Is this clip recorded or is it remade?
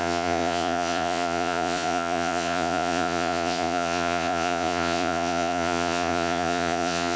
remade